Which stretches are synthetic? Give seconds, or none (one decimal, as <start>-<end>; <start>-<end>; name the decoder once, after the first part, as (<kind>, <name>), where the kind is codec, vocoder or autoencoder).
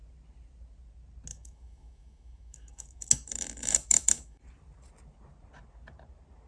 1.3-4.4 (autoencoder, DAC-VAE)